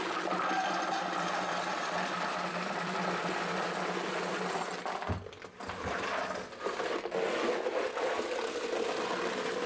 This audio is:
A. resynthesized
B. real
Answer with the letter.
B